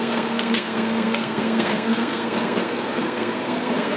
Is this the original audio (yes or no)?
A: no